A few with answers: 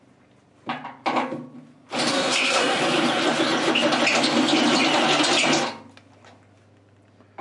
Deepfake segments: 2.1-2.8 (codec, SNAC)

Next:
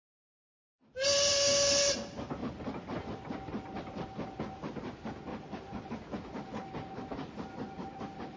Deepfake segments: 5.3-5.9 (vocoder, BigVGAN v2)

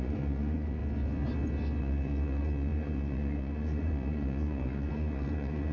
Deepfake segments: 0.0-0.8 (vocoder, Vocos); 1.8-5.7

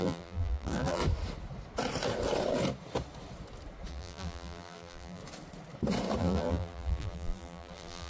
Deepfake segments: 0.0-1.0 (vocoder, BigVGAN v2); 3.9-5.2; 6.2-8.1